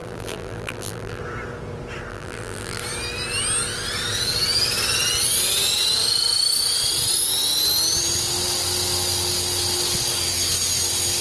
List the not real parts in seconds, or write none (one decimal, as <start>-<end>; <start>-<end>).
0.0-1.2; 2.1-2.8